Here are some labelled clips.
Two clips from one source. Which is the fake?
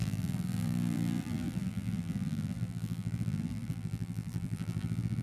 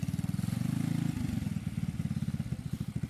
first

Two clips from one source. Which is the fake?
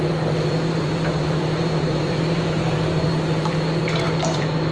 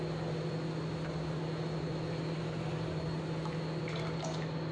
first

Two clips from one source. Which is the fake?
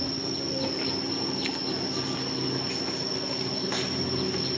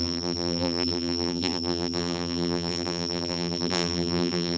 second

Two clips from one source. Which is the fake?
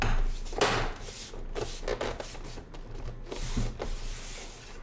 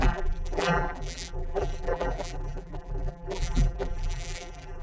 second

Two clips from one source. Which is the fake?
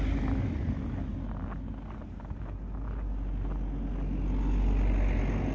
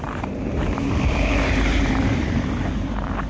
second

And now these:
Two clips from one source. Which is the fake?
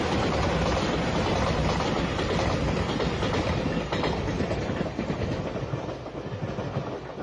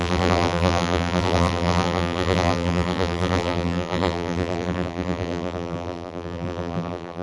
second